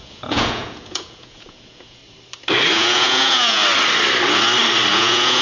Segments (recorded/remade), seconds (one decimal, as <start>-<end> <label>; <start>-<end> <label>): 0.0-2.0 remade; 2.0-2.7 recorded; 2.7-3.6 remade; 3.6-4.9 recorded; 4.9-5.4 remade